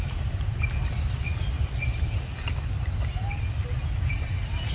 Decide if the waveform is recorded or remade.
remade